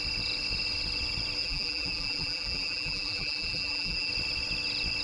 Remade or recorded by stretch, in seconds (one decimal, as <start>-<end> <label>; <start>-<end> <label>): 0.0-1.4 recorded; 1.4-4.1 remade; 4.1-5.0 recorded

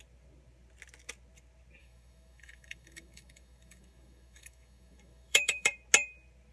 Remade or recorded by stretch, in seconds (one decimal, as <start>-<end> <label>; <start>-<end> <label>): 0.0-1.8 recorded; 1.8-5.7 remade; 5.7-6.5 recorded

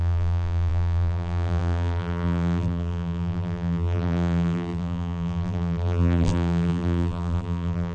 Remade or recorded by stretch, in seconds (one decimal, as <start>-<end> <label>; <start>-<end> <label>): 0.0-7.9 remade

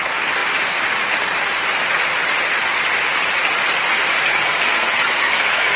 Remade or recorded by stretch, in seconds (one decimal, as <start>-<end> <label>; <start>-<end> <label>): 0.0-4.3 recorded; 4.3-5.8 remade

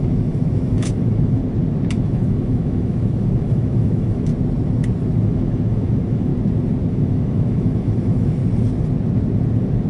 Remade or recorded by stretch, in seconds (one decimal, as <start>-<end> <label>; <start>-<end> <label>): 0.0-1.4 remade; 1.4-1.9 recorded; 1.9-4.3 remade; 4.3-5.2 recorded; 5.2-6.3 remade; 6.3-6.9 recorded; 6.9-8.4 remade; 8.4-9.9 recorded

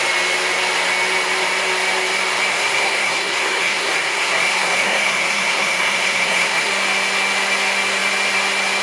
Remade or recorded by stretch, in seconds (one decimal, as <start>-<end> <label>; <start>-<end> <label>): 0.0-2.5 recorded; 2.5-6.7 remade; 6.7-8.8 recorded